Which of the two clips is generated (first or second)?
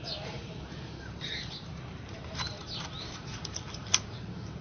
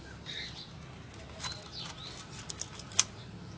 first